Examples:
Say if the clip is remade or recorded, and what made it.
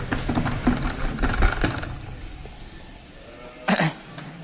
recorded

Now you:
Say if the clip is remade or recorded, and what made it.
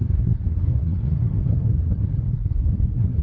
remade, codec, SNAC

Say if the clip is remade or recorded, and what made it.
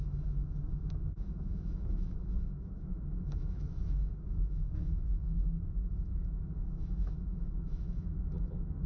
remade, autoencoder, DAC-VAE